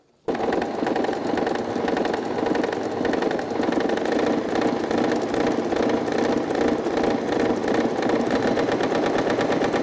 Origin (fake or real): real